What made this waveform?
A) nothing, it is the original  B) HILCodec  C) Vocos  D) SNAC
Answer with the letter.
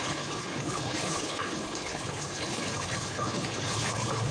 B